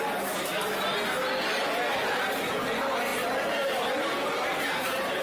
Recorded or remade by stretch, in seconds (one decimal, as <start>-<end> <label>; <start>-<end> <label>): 0.0-5.2 recorded